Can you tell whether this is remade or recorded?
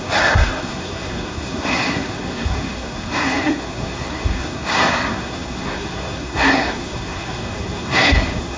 remade